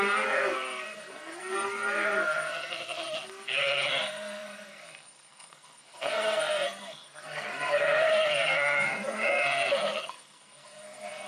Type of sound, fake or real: fake